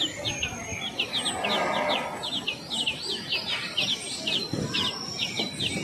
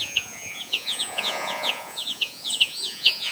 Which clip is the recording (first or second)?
first